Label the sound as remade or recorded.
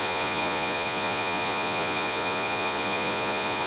remade